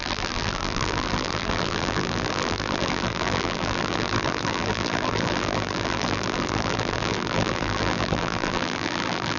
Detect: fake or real fake